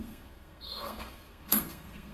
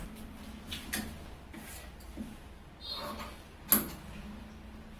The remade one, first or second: first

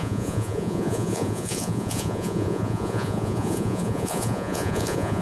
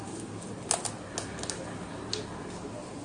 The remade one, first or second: first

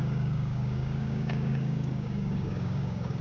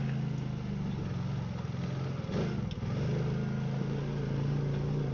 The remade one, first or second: first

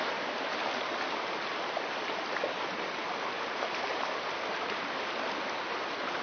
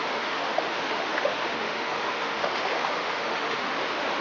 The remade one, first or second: second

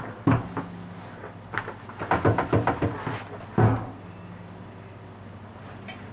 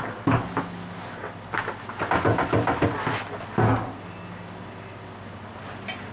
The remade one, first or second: first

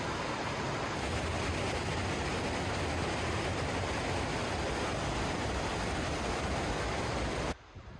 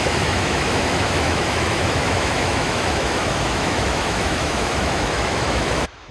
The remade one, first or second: second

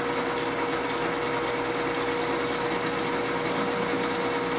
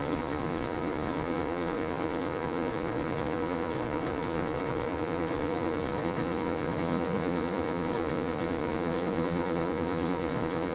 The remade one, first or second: second